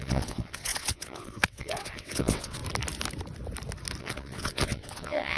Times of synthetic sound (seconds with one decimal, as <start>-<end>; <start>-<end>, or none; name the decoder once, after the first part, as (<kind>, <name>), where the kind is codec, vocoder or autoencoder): 0.0-2.6 (vocoder, WaveNeXt); 4.0-5.4